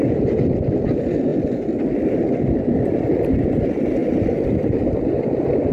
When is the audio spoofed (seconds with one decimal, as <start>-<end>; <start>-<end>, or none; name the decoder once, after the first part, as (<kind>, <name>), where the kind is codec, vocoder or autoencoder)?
1.3-1.9 (vocoder, BigVGAN v2); 4.0-5.7